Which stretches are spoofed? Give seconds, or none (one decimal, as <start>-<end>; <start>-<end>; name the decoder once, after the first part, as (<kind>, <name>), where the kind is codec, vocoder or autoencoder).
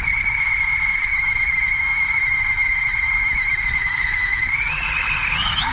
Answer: 1.1-4.5 (autoencoder, DAC-VAE)